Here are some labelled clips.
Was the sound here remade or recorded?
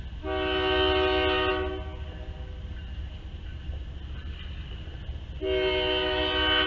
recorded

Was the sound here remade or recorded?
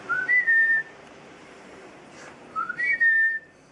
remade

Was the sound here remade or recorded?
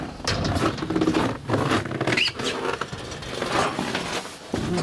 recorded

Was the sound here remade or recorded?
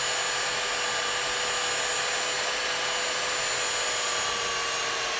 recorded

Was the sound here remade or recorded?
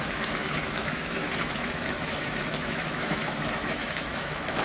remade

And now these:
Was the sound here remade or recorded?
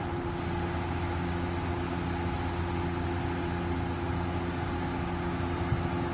recorded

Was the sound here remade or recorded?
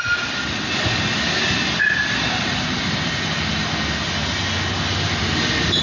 recorded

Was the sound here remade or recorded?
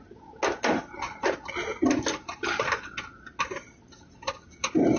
recorded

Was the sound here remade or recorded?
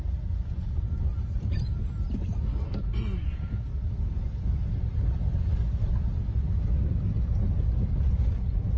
recorded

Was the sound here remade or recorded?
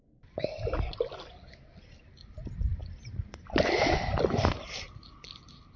recorded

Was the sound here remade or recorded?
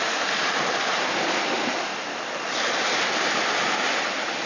recorded